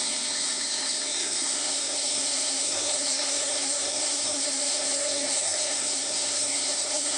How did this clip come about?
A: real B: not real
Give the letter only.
B